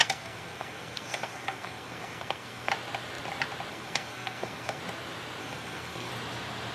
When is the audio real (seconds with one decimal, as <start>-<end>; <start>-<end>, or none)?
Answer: 2.7-3.7; 4.8-5.4; 6.1-6.7

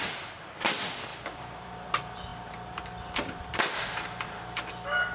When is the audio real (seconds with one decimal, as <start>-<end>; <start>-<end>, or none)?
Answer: 0.0-1.1; 1.9-5.1

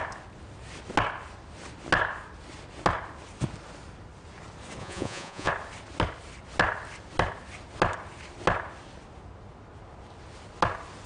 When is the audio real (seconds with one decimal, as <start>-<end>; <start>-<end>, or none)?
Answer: 0.0-4.8; 5.5-11.1

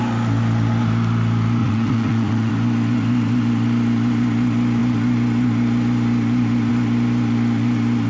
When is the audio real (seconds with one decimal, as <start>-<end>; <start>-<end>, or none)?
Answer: 0.0-1.6; 2.5-8.1